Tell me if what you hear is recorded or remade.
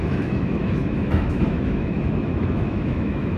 remade